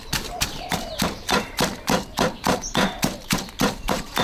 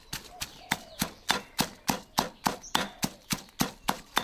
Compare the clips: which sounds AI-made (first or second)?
first